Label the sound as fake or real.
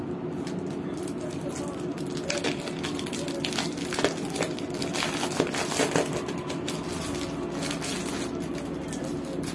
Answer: real